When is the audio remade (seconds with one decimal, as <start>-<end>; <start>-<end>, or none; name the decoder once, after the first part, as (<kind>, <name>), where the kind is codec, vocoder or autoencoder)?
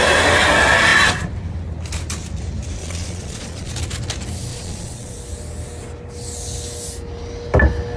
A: 2.8-3.7 (vocoder, Vocos); 4.5-5.1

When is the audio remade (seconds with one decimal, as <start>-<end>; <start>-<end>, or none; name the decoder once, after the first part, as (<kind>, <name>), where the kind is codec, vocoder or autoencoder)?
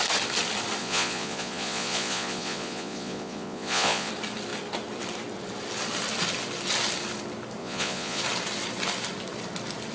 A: 0.8-4.1 (vocoder, Vocos); 7.6-8.2